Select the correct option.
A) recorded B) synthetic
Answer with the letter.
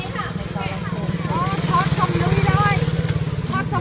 A